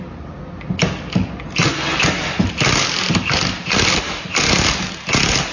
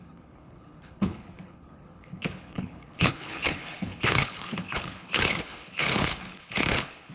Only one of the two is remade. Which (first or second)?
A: second